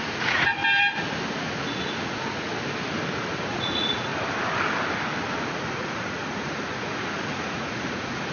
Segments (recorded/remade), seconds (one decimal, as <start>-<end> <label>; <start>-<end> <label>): 0.0-0.6 remade; 0.6-1.4 recorded; 1.4-2.5 remade; 2.5-3.4 recorded; 3.4-4.1 remade; 4.1-5.5 recorded; 5.5-8.3 remade